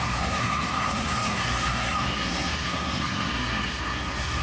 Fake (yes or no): yes